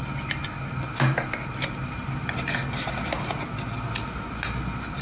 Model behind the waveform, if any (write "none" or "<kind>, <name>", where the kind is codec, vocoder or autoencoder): none